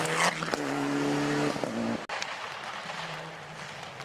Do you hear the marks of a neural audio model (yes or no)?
no